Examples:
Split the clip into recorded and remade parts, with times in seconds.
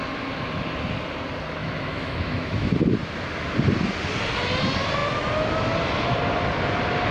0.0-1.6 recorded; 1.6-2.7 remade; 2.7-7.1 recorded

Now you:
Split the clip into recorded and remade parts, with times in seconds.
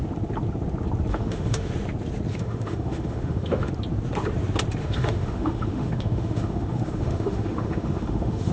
0.0-1.1 recorded; 1.1-1.7 remade; 1.7-2.3 recorded; 2.3-3.7 remade; 3.7-4.8 recorded; 4.8-8.5 remade